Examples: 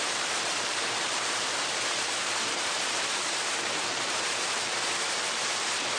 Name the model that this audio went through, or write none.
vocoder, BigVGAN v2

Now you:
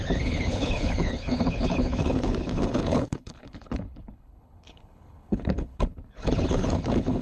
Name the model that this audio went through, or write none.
codec, HILCodec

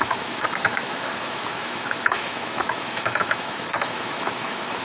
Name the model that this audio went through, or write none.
autoencoder, DAC-VAE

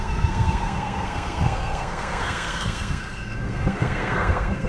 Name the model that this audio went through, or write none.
codec, SNAC